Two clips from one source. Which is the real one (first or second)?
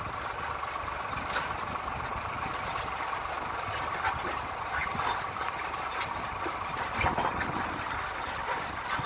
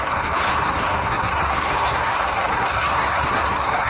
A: first